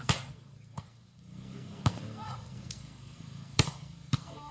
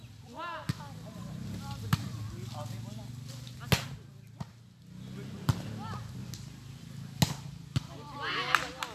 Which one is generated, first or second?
first